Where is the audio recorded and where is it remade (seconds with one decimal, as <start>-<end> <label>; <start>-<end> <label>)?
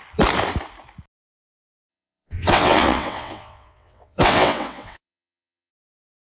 0.0-1.9 recorded; 1.9-5.7 remade; 5.7-6.4 recorded